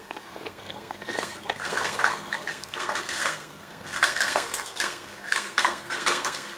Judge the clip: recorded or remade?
remade